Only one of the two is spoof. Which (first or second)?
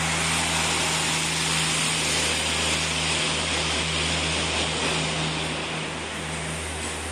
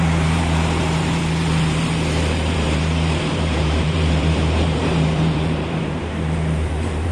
second